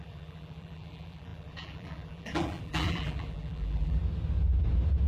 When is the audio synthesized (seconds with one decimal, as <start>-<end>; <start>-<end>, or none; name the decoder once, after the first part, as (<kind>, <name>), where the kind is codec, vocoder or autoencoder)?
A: 0.0-4.0 (vocoder, BigVGAN v2)